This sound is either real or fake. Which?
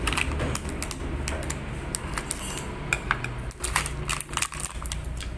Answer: real